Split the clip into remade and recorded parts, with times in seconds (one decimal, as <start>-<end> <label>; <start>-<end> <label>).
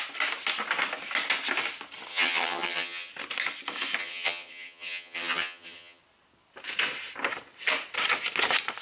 0.0-2.1 recorded; 2.1-3.1 remade; 3.1-4.0 recorded; 4.0-6.0 remade; 6.0-8.8 recorded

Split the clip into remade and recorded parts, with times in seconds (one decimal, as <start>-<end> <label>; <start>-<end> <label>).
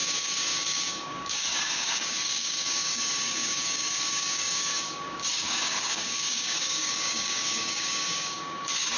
0.0-9.0 remade